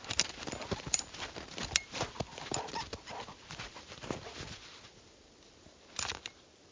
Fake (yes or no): no